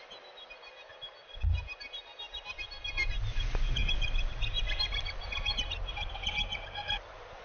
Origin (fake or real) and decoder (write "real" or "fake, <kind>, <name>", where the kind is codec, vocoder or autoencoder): real